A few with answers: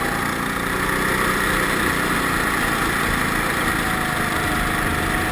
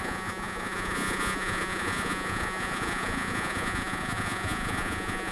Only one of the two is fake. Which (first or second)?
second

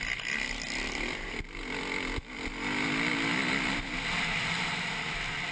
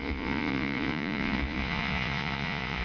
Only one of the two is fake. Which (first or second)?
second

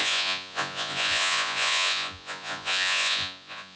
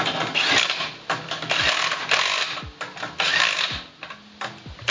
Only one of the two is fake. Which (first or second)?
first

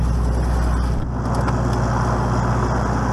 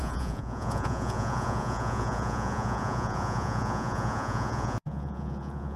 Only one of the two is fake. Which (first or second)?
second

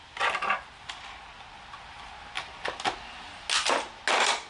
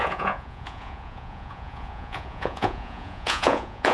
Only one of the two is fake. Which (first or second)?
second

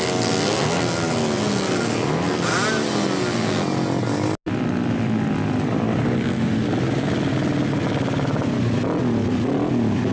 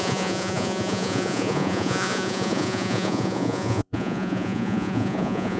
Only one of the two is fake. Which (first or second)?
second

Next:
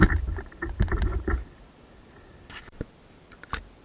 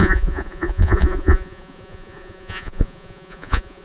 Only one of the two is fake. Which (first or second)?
second